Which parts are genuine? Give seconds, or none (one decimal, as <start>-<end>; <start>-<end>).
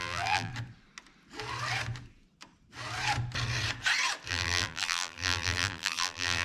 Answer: 0.5-4.3